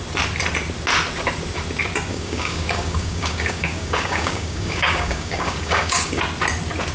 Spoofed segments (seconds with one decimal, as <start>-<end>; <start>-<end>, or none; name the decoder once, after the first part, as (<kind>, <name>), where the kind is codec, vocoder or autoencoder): 2.1-6.2 (codec, DAC)